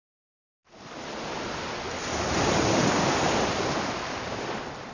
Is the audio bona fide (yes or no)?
yes